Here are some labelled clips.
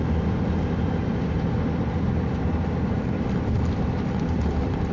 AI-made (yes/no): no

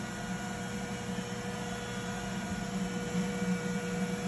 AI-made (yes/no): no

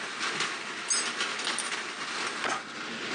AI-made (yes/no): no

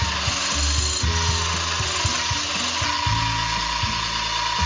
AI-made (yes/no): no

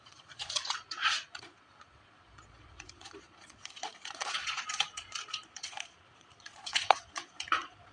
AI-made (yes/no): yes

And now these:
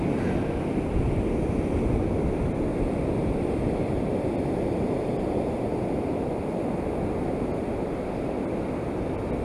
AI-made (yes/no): no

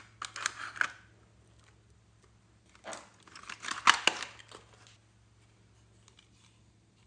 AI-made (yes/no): no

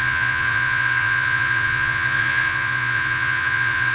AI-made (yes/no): yes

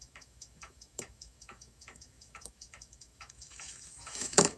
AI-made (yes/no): yes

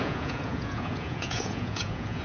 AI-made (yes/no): yes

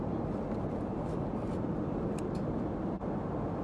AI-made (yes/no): no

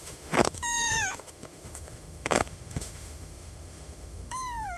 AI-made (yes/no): yes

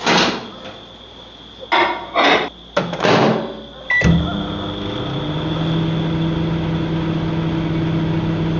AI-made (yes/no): no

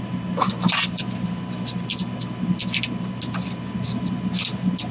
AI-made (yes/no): no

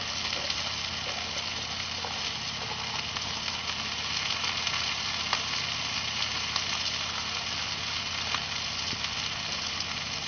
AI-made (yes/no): no